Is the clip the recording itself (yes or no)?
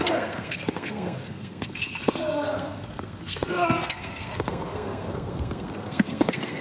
no